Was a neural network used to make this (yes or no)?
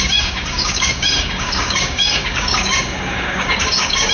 yes